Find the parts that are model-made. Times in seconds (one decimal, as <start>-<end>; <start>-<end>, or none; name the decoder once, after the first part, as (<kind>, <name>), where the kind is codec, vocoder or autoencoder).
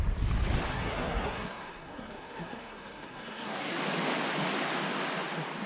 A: 0.7-3.8 (codec, SNAC)